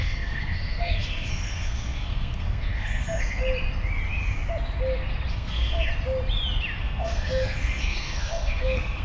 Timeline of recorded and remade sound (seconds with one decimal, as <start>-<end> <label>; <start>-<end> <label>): 0.0-3.4 remade; 3.4-5.3 recorded; 5.3-5.9 remade; 5.9-6.8 recorded; 6.8-9.0 remade